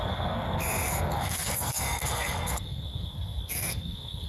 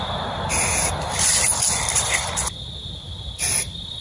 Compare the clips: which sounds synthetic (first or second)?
first